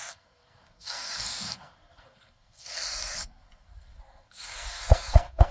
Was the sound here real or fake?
fake